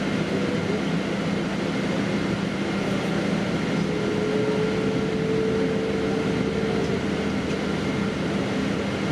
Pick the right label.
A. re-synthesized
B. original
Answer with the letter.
B